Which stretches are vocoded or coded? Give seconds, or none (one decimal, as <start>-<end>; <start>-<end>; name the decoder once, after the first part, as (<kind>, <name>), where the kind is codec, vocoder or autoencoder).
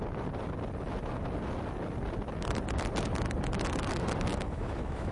4.3-5.1 (autoencoder, DAC-VAE)